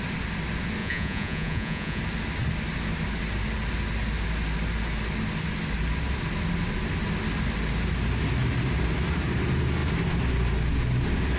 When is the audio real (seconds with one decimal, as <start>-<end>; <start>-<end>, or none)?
0.0-0.8; 2.0-11.4